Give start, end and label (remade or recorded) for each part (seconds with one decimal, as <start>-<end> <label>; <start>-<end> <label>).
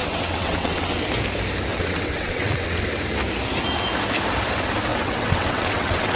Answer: 0.0-1.0 remade; 1.0-1.7 recorded; 1.7-2.8 remade; 2.8-4.9 recorded; 4.9-6.2 remade